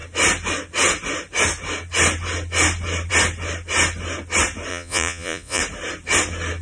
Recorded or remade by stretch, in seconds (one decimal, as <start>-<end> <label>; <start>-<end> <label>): 0.0-4.7 recorded; 4.7-5.6 remade; 5.6-6.6 recorded